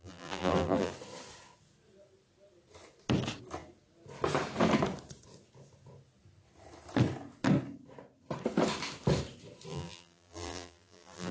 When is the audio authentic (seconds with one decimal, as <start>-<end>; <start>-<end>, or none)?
0.9-9.7